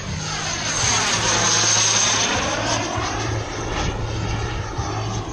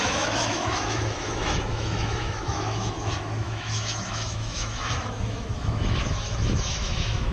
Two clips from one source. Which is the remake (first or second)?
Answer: second